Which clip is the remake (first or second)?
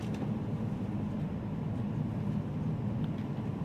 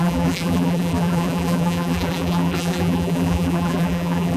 second